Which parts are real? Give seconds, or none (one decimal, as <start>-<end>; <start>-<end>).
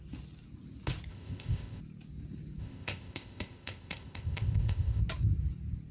0.0-1.1; 1.8-2.6; 5.0-5.9